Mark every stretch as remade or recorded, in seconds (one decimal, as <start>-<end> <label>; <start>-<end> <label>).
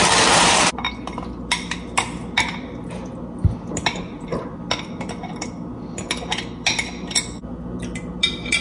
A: 0.0-8.6 recorded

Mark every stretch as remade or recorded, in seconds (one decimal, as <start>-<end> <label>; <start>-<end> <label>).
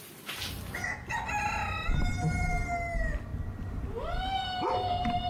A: 0.0-5.3 recorded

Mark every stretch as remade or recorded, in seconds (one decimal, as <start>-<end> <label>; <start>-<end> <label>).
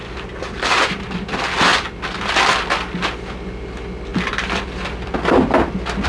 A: 0.0-1.0 remade; 1.0-4.1 recorded; 4.1-4.6 remade; 4.6-6.1 recorded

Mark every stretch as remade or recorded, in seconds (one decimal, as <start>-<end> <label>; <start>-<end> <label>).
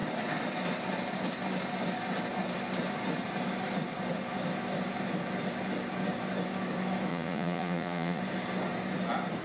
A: 0.0-7.1 recorded; 7.1-8.2 remade; 8.2-9.4 recorded